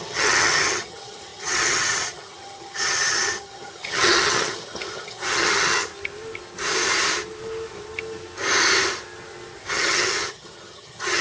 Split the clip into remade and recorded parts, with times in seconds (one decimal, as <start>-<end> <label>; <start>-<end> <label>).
0.0-5.9 remade; 5.9-9.7 recorded; 9.7-11.2 remade